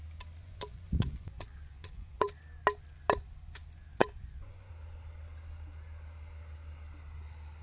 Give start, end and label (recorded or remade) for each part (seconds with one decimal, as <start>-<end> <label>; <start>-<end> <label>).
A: 0.0-0.4 recorded; 0.4-2.3 remade; 2.3-4.0 recorded; 4.0-4.7 remade; 4.7-7.6 recorded